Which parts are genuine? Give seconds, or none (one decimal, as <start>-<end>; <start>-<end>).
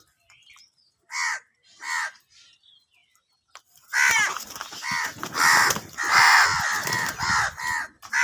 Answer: 0.0-8.2